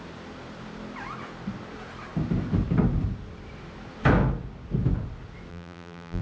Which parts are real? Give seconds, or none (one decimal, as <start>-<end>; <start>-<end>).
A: 0.0-5.5